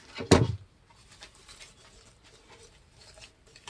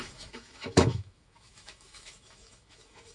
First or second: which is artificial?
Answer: second